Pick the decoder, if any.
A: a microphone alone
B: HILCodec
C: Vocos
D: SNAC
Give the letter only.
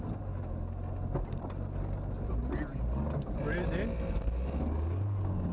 A